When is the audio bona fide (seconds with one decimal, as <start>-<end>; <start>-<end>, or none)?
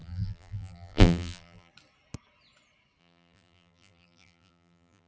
1.7-3.0